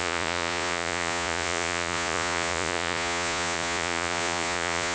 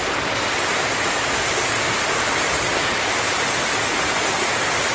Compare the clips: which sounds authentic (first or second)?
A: second